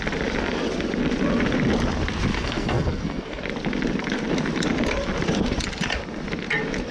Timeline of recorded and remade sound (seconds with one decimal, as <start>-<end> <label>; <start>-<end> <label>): 0.0-2.3 recorded; 2.3-3.4 remade; 3.4-6.9 recorded